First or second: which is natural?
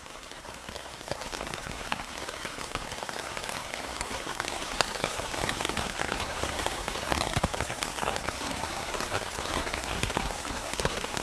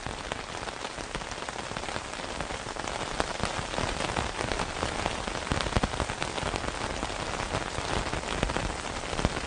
second